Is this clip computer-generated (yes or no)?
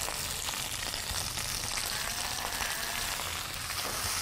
no